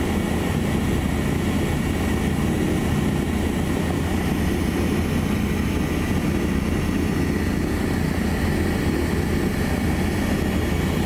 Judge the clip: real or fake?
real